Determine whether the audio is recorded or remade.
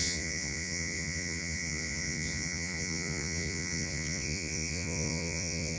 remade